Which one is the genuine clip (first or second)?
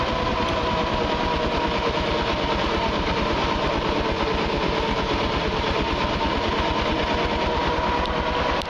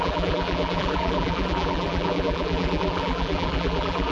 first